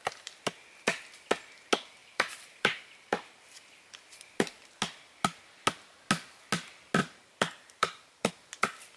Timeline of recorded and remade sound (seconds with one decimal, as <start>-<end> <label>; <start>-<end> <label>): 0.0-2.0 recorded; 2.0-3.8 remade; 3.8-7.0 recorded; 7.0-8.3 remade; 8.3-9.0 recorded